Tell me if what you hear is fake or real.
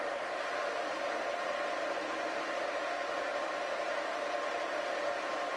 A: real